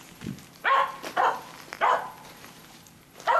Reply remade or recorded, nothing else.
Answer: remade